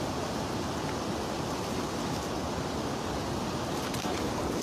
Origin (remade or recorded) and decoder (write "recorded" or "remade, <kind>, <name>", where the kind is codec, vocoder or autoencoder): recorded